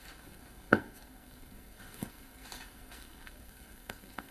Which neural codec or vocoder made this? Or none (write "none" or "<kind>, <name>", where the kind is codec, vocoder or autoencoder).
codec, SNAC